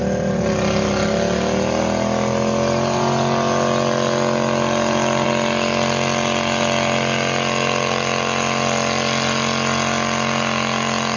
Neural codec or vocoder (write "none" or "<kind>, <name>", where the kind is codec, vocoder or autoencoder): none